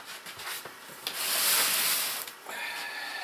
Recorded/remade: recorded